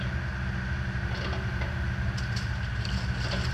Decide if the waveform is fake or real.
real